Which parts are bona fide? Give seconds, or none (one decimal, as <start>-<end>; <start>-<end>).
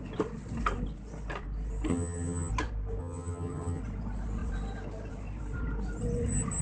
0.0-1.9; 2.5-3.0; 3.8-6.6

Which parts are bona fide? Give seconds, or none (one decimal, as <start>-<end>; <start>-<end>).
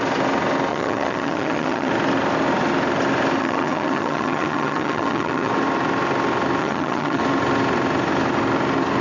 0.0-0.7; 1.9-3.4; 5.5-6.6; 7.2-9.0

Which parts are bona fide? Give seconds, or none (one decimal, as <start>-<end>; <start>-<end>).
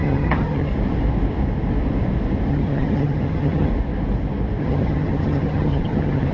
0.7-2.5; 3.7-4.6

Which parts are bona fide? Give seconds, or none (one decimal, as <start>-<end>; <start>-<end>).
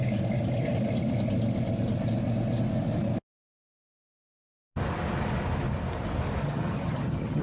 0.0-6.4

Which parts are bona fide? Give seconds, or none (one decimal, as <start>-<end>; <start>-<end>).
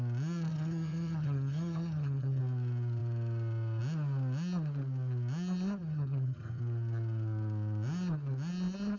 0.0-0.5; 2.4-5.8; 6.6-9.0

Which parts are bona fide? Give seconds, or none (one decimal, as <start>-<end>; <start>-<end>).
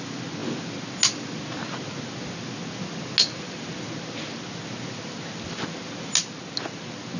0.0-7.2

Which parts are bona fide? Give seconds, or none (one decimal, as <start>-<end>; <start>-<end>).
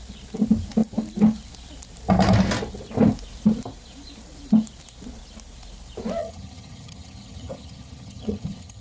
0.0-6.2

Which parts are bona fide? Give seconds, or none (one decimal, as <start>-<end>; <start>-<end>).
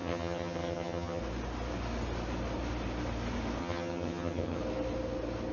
1.2-3.6; 4.6-5.5